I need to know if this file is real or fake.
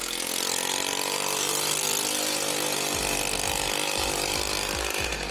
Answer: real